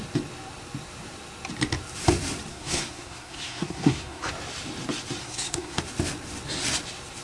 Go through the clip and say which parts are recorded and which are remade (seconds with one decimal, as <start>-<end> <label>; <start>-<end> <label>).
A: 0.0-2.5 recorded; 2.5-4.3 remade; 4.3-5.2 recorded; 5.2-5.8 remade; 5.8-7.2 recorded